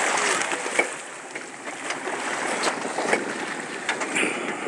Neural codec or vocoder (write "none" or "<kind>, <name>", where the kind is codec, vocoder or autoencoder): none